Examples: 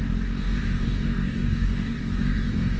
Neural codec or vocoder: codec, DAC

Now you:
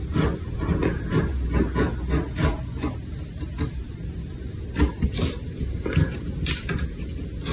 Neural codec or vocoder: none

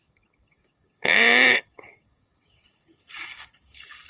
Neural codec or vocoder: codec, DAC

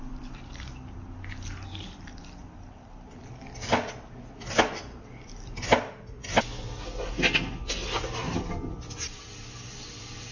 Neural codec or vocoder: none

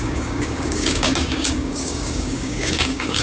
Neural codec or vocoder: codec, DAC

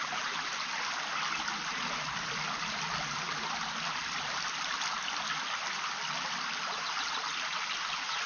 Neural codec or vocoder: none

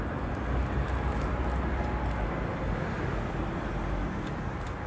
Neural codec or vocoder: none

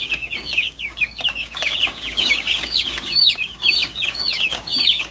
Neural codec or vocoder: codec, DAC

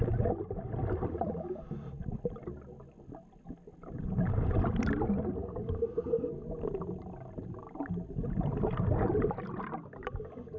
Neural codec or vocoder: none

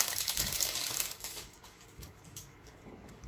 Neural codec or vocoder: codec, DAC